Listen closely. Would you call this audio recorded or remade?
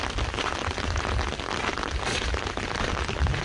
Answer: recorded